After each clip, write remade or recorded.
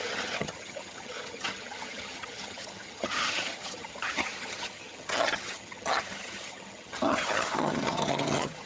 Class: remade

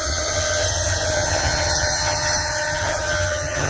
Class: remade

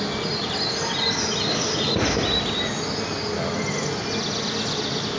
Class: recorded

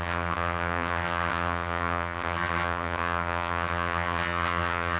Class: remade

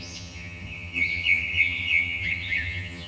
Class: remade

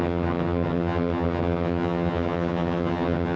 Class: remade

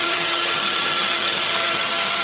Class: remade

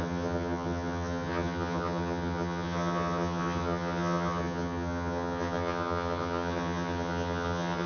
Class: remade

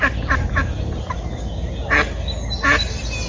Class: recorded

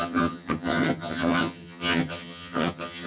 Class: remade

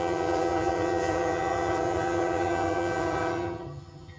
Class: remade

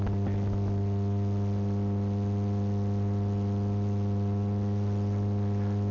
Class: recorded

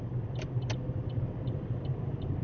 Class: recorded